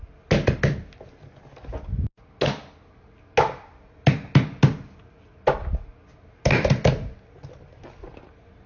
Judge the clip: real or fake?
real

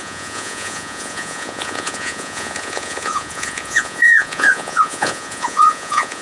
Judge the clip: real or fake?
fake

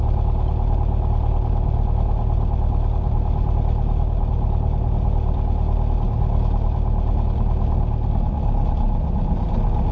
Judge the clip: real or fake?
real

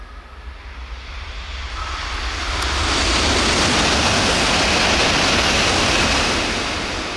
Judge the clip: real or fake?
real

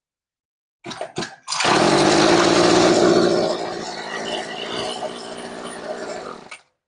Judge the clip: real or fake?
real